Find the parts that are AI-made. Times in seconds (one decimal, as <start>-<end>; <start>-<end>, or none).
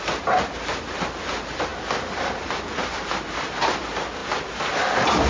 none